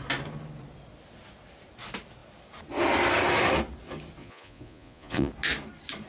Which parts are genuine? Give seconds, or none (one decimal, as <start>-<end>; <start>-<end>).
0.0-4.2; 5.3-6.1